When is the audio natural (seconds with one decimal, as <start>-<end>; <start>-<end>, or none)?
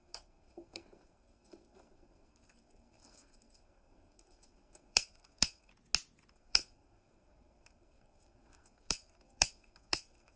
5.7-6.3